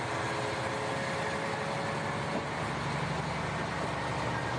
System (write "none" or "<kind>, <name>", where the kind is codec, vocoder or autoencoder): none